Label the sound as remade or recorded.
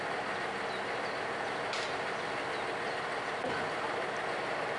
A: remade